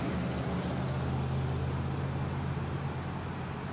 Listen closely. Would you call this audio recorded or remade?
recorded